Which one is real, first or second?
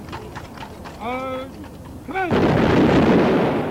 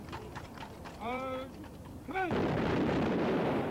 first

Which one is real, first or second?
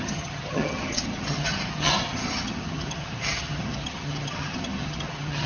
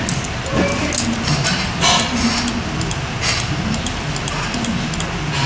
second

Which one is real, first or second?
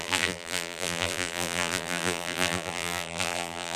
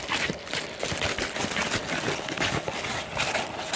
second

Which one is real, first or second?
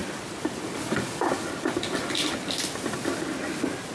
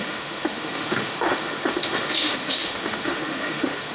first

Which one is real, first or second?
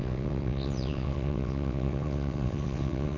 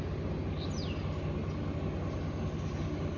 second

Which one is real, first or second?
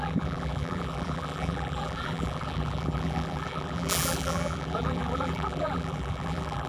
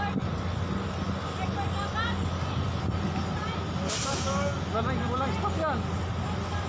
second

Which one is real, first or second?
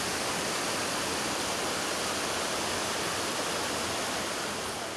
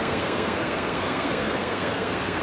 first